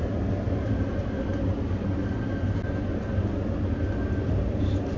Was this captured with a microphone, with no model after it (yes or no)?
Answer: yes